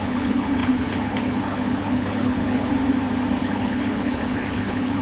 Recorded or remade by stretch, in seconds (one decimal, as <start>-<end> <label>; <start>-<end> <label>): 0.0-2.7 remade; 2.7-3.4 recorded; 3.4-5.0 remade